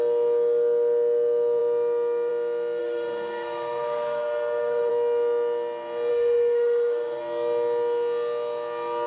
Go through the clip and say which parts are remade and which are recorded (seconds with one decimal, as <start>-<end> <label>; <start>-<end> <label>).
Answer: 0.0-2.8 recorded; 2.8-4.9 remade; 4.9-6.1 recorded; 6.1-7.2 remade; 7.2-9.1 recorded